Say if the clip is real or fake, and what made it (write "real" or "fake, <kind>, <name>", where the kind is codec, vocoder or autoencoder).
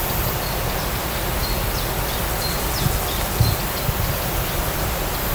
real